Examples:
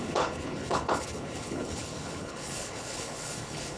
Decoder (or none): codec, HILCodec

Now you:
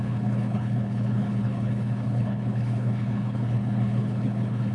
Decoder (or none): codec, HILCodec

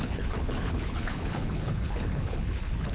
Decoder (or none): codec, HILCodec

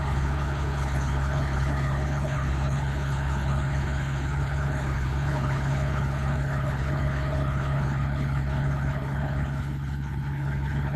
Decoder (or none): codec, HILCodec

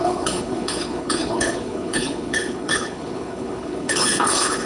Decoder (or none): codec, HILCodec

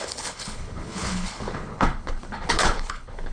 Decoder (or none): codec, HILCodec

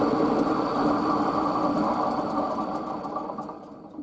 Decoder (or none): none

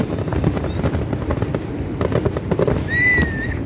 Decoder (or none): none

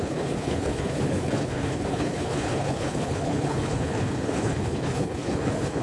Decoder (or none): codec, HILCodec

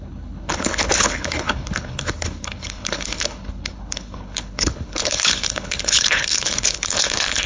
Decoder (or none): codec, HILCodec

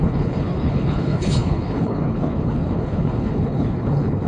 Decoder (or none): codec, HILCodec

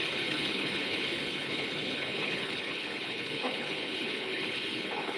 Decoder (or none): codec, HILCodec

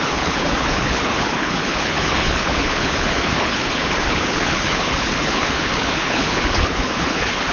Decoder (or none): codec, HILCodec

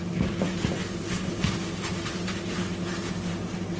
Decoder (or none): none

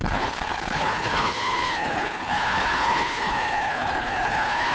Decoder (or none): codec, HILCodec